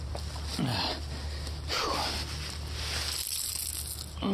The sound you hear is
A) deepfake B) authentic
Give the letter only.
B